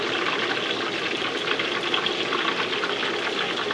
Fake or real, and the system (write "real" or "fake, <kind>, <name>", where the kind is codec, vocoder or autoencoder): real